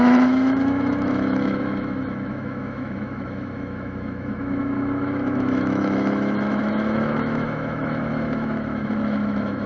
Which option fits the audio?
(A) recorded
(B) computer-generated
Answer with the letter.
B